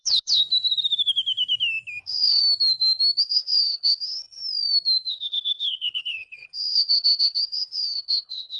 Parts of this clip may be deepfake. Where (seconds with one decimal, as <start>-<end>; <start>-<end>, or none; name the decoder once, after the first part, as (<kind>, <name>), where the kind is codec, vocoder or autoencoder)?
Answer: 0.0-0.4 (codec, HILCodec); 2.0-2.4; 3.2-4.4; 5.1-8.6